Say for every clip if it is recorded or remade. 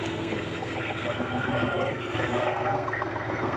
remade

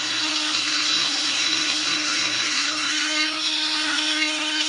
remade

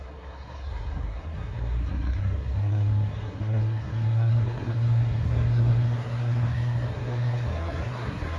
remade